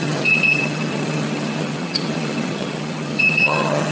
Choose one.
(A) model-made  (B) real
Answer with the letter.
A